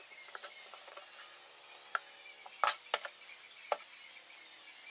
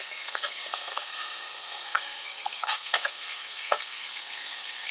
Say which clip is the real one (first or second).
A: first